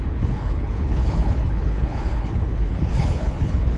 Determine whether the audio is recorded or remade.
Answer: remade